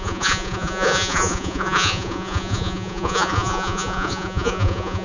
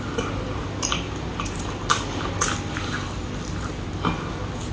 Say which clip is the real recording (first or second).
second